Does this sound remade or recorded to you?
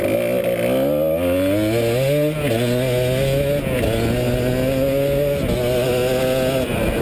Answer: recorded